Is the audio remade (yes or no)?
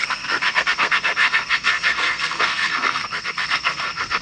yes